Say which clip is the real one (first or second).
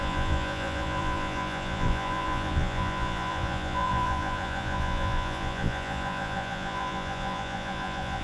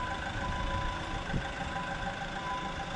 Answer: second